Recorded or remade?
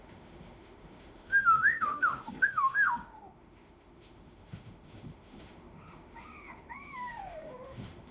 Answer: remade